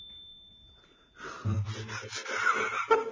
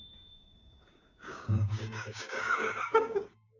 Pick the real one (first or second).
first